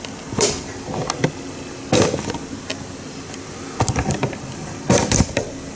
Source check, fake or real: real